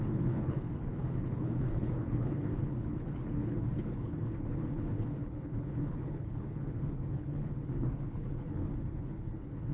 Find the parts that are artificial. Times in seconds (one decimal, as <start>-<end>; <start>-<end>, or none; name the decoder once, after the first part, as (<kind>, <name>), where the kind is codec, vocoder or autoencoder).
0.0-9.7 (codec, HILCodec)